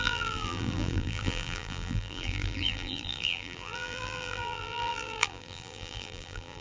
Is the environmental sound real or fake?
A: fake